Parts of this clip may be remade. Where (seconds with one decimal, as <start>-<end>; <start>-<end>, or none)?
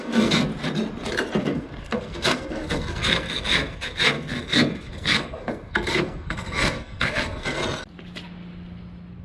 0.0-0.5; 1.4-7.6